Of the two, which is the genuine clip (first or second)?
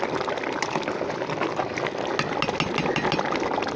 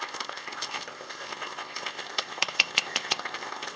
first